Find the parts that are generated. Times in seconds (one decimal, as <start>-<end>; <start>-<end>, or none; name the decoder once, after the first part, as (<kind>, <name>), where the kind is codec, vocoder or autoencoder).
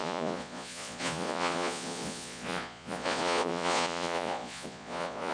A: 0.0-5.3 (vocoder, Vocos)